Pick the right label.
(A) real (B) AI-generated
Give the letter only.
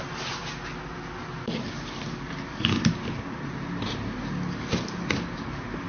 A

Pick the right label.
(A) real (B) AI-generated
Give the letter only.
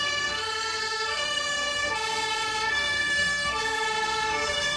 B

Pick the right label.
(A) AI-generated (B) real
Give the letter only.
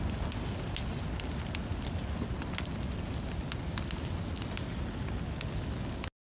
B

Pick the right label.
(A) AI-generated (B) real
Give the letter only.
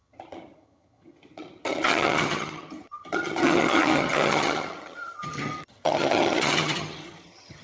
A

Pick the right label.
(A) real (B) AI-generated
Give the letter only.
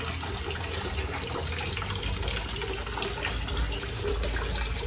A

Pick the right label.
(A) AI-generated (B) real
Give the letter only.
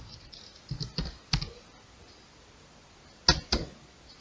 B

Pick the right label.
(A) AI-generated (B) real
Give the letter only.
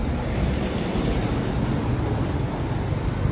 B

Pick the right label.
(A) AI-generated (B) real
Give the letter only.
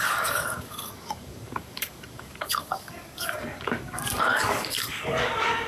A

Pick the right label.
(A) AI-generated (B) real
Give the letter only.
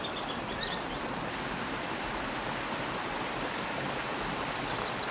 B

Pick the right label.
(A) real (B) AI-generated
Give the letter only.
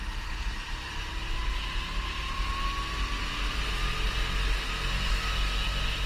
A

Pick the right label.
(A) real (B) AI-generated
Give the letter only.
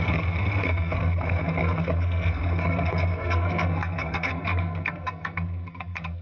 B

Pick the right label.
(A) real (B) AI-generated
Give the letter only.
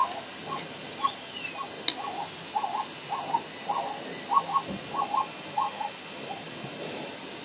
A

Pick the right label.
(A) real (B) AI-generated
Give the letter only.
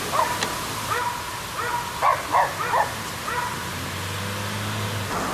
A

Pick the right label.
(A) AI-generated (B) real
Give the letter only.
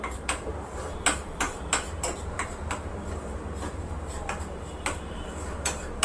A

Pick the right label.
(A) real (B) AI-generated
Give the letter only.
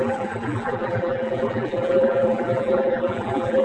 B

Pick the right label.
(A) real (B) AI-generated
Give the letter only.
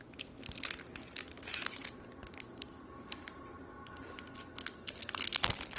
A